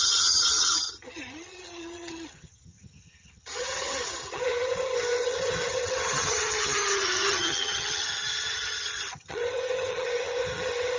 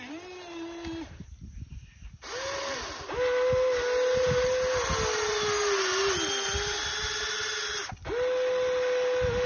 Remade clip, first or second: first